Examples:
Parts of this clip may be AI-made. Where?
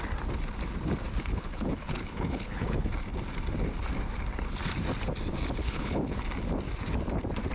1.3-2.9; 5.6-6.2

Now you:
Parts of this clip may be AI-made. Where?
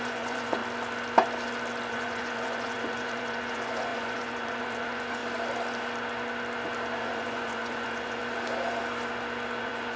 0.0-0.6; 1.9-5.2; 7.0-8.2; 9.6-10.0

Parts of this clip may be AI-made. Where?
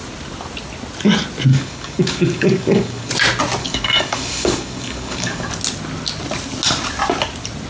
1.5-3.1; 3.6-5.5